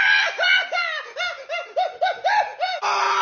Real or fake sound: real